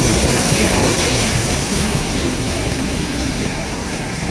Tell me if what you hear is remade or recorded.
remade